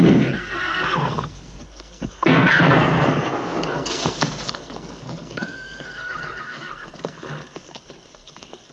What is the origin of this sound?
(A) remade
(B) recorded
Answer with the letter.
A